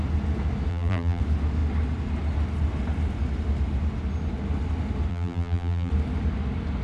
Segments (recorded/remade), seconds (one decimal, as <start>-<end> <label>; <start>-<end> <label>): 0.0-0.7 recorded; 0.7-1.2 remade; 1.2-5.1 recorded; 5.1-5.9 remade; 5.9-6.8 recorded